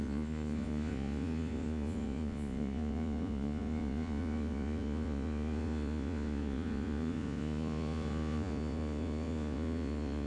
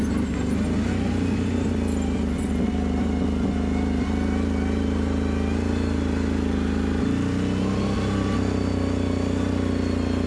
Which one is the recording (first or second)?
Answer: second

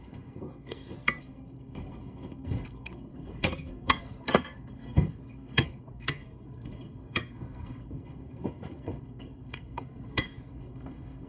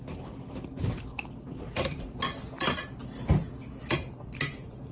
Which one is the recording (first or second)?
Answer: second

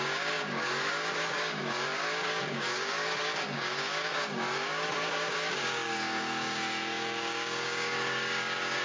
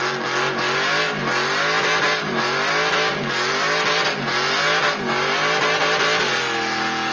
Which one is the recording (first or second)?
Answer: second